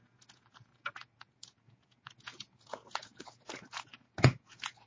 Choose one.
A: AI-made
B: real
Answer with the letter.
A